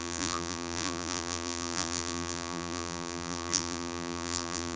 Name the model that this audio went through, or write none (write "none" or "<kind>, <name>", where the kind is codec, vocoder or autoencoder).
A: vocoder, BigVGAN v2